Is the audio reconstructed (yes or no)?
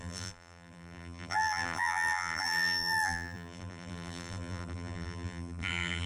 yes